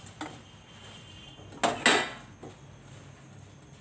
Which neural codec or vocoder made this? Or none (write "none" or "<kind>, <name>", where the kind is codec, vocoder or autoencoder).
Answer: none